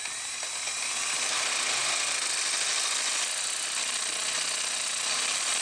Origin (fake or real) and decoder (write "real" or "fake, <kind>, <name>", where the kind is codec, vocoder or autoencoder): real